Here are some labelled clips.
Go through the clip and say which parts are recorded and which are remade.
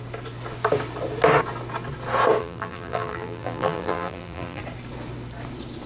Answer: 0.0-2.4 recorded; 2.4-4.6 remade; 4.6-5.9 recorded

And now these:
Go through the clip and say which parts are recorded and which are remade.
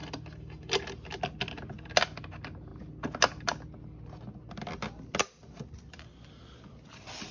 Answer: 0.0-7.3 recorded